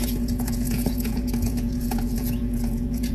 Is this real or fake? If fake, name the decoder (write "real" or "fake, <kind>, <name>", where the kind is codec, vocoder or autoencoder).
fake, vocoder, Vocos